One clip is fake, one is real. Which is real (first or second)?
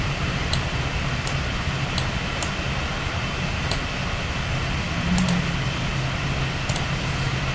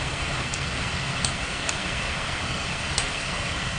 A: first